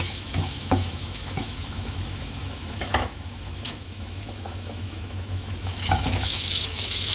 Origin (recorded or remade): remade